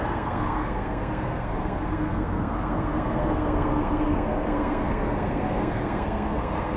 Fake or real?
fake